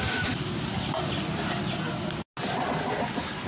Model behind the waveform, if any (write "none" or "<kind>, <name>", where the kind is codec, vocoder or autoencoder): none